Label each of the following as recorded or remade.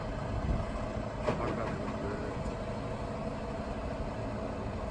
recorded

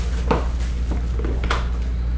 recorded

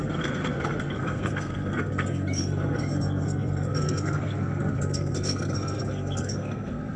remade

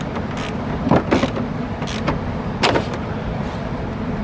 recorded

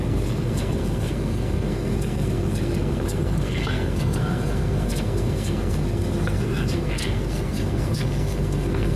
remade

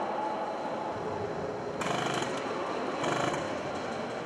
recorded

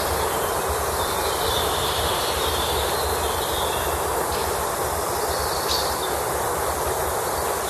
recorded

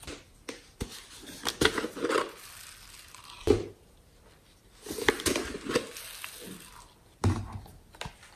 recorded